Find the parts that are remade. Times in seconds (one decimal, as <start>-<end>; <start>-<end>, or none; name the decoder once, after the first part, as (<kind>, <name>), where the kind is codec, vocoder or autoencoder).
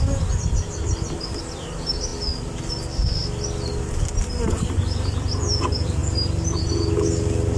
3.2-4.3 (vocoder, BigVGAN v2)